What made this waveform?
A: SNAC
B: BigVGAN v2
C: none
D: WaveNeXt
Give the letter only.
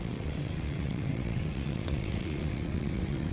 D